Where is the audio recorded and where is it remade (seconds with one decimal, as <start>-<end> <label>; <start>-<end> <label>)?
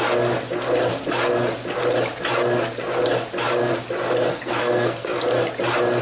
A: 0.0-4.3 recorded; 4.3-5.2 remade; 5.2-6.0 recorded